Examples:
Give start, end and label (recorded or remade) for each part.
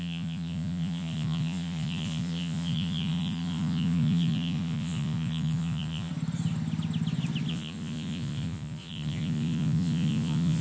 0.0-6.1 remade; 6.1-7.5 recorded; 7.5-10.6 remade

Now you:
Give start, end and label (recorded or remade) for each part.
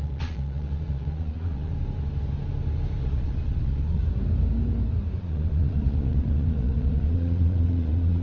0.0-1.7 remade; 1.7-3.0 recorded; 3.0-4.0 remade; 4.0-5.2 recorded; 5.2-8.2 remade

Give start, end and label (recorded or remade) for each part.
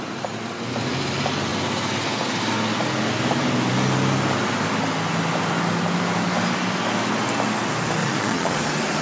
0.0-8.0 recorded; 8.0-8.6 remade; 8.6-9.0 recorded